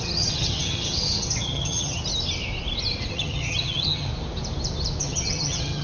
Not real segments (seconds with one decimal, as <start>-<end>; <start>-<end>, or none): 0.0-2.1; 3.1-4.1; 5.0-5.8